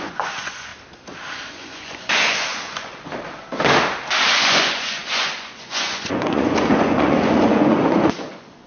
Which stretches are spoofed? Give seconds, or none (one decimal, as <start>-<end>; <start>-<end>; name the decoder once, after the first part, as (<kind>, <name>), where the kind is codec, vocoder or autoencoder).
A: 0.0-0.7 (vocoder, Vocos); 1.5-3.1; 4.3-8.7